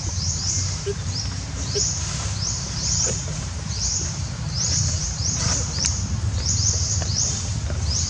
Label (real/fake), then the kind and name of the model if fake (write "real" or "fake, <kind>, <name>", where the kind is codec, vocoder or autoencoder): fake, vocoder, BigVGAN v2